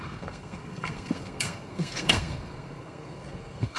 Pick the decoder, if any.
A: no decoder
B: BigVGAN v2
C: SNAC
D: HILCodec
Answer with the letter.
C